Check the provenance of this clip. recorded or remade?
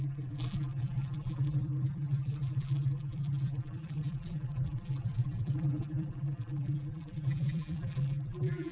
remade